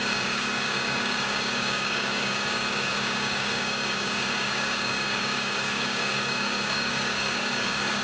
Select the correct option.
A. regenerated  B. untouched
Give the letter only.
A